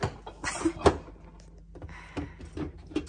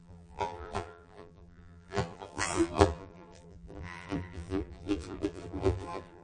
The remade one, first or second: second